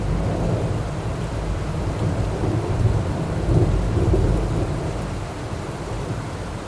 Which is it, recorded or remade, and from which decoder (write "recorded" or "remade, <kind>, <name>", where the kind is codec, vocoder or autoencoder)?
remade, vocoder, BigVGAN v2